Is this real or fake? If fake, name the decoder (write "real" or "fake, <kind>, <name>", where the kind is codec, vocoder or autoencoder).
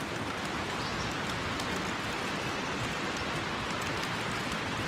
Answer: real